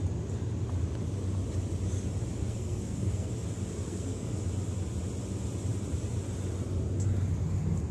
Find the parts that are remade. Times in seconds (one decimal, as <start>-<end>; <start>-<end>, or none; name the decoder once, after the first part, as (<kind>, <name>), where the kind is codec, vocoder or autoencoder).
2.4-3.3 (codec, SNAC); 3.7-4.4